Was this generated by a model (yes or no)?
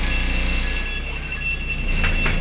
no